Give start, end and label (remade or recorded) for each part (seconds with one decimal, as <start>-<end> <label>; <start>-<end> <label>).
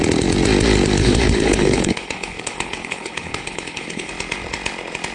0.0-1.0 recorded; 1.0-4.1 remade; 4.1-5.1 recorded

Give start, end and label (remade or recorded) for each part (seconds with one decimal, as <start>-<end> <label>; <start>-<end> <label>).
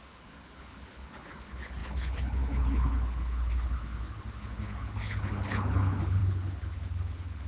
0.0-7.5 remade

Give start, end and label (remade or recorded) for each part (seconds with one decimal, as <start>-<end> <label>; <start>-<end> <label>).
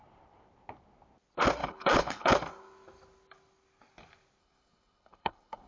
0.0-1.6 recorded; 1.6-2.3 remade; 2.3-4.4 recorded; 4.4-5.7 remade